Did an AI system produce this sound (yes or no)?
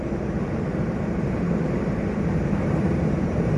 yes